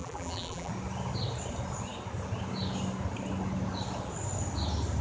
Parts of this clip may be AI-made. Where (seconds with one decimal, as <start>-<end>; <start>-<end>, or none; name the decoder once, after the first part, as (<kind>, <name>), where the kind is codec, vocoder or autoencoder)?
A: 0.0-0.7 (vocoder, BigVGAN v2)